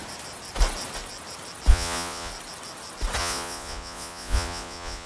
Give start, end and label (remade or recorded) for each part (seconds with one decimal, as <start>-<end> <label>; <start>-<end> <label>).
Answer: 0.0-1.7 recorded; 1.7-2.3 remade; 2.3-3.2 recorded; 3.2-5.1 remade